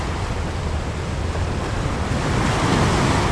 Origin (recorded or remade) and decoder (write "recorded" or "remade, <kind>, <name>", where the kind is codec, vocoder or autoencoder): recorded